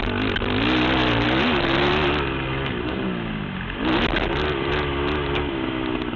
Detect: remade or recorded recorded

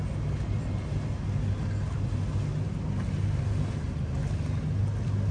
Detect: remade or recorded recorded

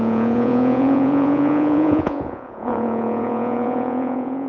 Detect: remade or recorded remade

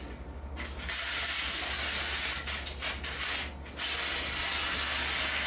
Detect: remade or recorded recorded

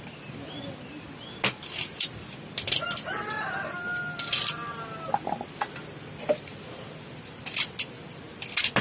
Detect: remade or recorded recorded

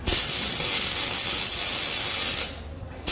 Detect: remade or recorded recorded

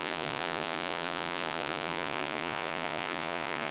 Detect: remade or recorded remade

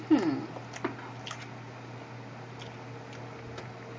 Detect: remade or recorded recorded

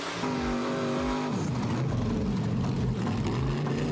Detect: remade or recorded recorded